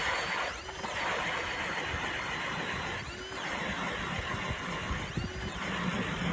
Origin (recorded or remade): recorded